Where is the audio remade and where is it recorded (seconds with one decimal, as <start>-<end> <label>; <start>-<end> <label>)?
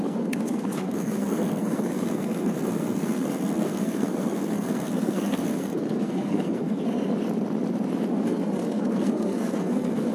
0.0-7.1 remade; 7.1-8.1 recorded; 8.1-10.1 remade